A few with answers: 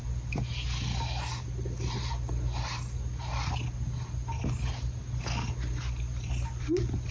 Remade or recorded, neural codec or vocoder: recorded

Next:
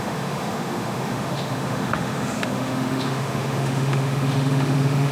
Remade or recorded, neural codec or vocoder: remade, autoencoder, DAC-VAE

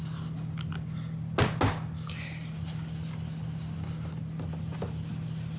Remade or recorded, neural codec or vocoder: recorded